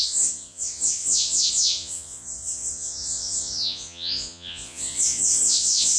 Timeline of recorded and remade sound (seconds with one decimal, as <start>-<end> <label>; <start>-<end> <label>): 0.0-6.0 remade

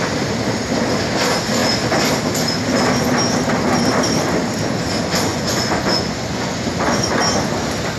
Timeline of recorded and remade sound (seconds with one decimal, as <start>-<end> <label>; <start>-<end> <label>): 0.0-5.3 recorded; 5.3-7.2 remade; 7.2-8.0 recorded

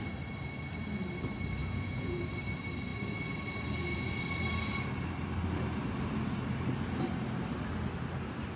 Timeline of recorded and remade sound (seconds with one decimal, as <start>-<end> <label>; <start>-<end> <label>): 0.0-1.6 recorded; 1.6-2.2 remade; 2.2-8.6 recorded

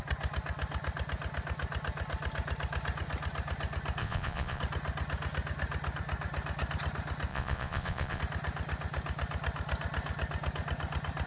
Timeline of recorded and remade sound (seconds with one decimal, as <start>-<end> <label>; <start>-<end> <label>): 0.0-4.0 recorded; 4.0-4.6 remade; 4.6-7.3 recorded; 7.3-8.2 remade; 8.2-11.3 recorded

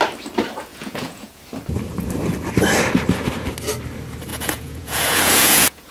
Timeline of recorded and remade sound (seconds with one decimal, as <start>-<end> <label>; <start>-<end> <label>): 0.0-0.7 recorded; 0.7-1.4 remade; 1.4-4.3 recorded; 4.3-5.9 remade